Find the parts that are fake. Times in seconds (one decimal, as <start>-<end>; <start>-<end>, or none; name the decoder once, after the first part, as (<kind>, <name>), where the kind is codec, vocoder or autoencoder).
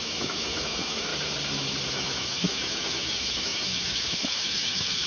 0.0-1.1 (autoencoder, DAC-VAE); 1.9-5.1